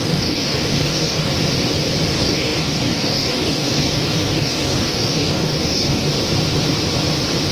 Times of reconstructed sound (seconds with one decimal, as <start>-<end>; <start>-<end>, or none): 0.0-1.3; 2.1-6.1